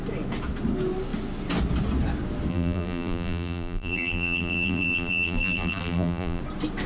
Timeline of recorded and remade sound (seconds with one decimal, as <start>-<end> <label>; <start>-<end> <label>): 0.0-2.5 recorded; 2.5-6.4 remade; 6.4-6.9 recorded